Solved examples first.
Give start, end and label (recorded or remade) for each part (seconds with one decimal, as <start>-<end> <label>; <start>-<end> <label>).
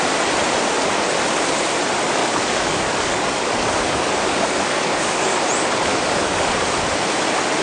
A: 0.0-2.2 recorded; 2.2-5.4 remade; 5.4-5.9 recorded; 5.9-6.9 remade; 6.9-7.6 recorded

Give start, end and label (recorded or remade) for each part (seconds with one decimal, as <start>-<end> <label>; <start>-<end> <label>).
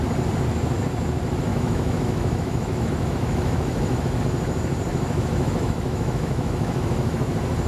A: 0.0-1.5 recorded; 1.5-4.2 remade; 4.2-4.9 recorded; 4.9-7.3 remade; 7.3-7.7 recorded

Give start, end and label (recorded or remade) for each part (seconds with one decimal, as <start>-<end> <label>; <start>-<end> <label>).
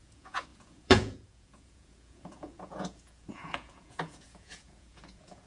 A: 0.0-5.5 remade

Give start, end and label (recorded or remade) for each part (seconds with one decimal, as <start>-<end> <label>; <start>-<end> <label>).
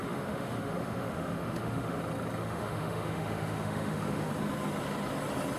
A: 0.0-2.0 remade; 2.0-2.4 recorded; 2.4-4.3 remade; 4.3-5.6 recorded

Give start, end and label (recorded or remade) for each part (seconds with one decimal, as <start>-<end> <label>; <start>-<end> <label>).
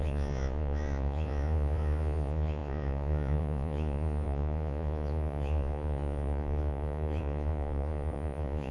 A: 0.0-8.7 remade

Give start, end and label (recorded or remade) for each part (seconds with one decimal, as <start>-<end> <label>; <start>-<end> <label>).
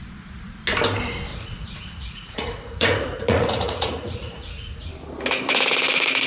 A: 0.0-1.3 recorded; 1.3-4.9 remade; 4.9-6.3 recorded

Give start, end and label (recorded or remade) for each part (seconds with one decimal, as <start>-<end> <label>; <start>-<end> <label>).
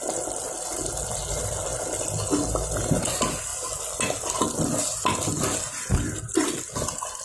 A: 0.0-7.2 recorded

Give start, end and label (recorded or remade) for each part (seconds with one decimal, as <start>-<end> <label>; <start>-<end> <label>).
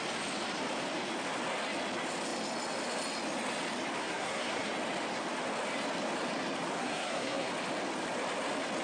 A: 0.0-4.0 recorded; 4.0-4.7 remade; 4.7-6.8 recorded; 6.8-7.5 remade; 7.5-8.8 recorded